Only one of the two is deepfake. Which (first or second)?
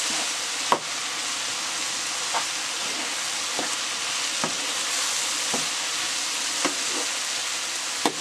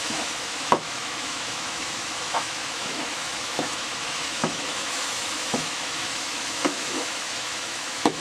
second